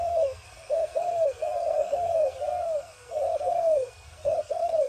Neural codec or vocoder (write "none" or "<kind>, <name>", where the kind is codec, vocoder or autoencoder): codec, SNAC